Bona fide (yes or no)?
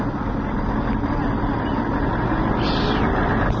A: yes